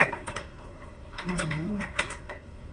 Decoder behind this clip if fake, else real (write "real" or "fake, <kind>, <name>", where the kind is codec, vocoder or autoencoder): fake, codec, SNAC